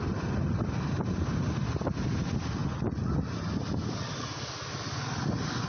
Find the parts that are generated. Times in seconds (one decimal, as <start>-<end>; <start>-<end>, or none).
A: none